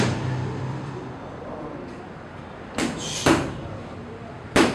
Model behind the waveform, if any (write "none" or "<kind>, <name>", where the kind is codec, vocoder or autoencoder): vocoder, BigVGAN v2